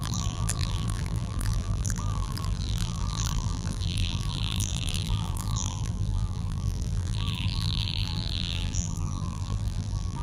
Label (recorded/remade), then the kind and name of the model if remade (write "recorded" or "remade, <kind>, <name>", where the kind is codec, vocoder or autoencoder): remade, vocoder, BigVGAN v2